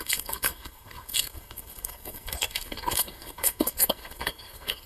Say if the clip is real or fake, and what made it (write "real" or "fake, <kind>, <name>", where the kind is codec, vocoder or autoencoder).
fake, codec, SNAC